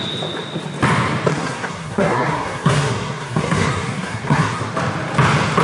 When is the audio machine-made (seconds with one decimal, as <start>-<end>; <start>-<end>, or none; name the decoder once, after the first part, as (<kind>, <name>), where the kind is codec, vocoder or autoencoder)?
1.3-4.7 (codec, SNAC)